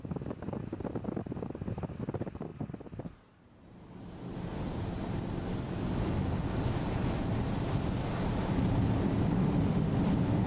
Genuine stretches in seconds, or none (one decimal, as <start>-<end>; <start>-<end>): 0.0-9.4; 10.0-10.5